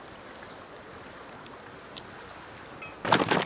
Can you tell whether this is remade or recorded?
recorded